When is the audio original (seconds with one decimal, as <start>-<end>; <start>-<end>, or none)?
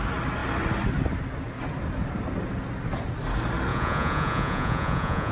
0.0-3.7